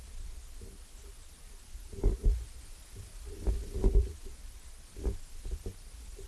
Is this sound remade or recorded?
recorded